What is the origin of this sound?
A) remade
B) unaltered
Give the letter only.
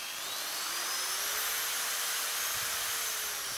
B